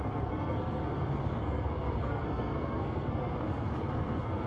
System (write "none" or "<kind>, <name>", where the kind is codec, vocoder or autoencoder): codec, SNAC